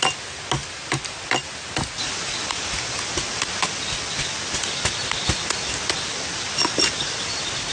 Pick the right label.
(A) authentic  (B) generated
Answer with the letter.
A